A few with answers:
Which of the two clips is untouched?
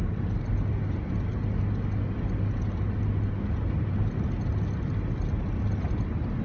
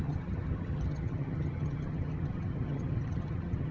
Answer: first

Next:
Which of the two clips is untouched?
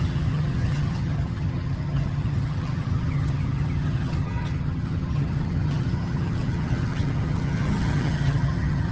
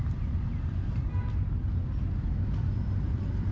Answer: second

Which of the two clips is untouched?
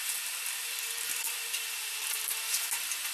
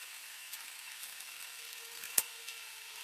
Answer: first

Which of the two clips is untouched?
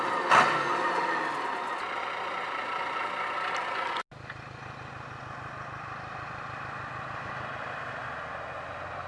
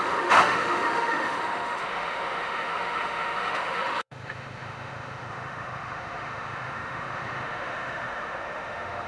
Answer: first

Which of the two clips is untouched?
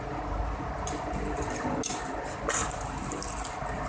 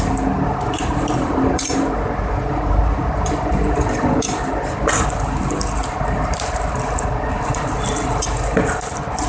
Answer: first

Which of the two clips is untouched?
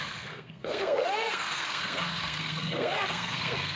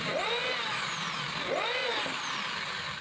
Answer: second